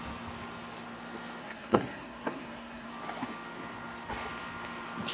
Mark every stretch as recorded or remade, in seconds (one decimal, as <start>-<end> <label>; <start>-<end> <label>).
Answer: 0.0-1.4 recorded; 1.4-2.9 remade; 2.9-5.1 recorded